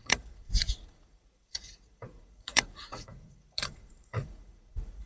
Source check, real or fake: fake